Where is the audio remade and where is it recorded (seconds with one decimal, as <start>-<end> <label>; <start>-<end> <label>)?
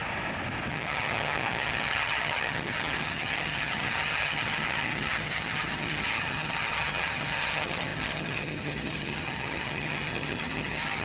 0.0-0.7 recorded; 0.7-11.0 remade